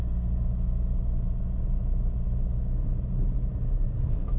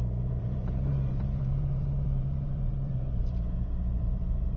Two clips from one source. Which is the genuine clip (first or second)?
first